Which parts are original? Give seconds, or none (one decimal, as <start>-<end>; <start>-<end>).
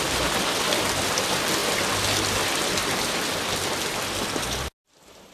1.6-4.8